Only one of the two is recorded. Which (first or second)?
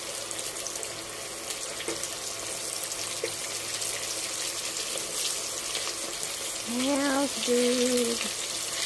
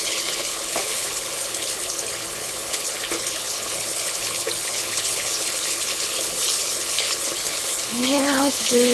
first